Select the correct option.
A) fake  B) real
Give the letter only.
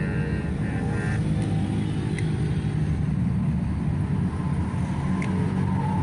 B